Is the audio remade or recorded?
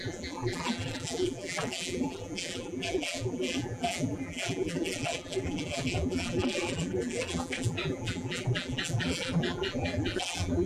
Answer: remade